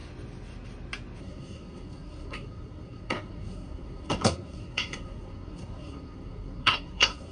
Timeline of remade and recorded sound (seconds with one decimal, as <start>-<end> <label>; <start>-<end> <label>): 0.0-1.2 recorded; 1.2-7.3 remade